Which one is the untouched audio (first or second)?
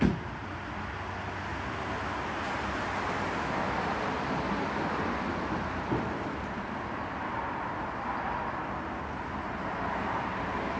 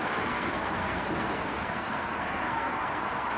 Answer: first